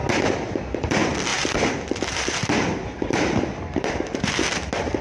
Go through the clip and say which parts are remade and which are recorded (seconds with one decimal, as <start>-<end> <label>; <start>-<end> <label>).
0.0-1.3 recorded; 1.3-4.3 remade; 4.3-5.0 recorded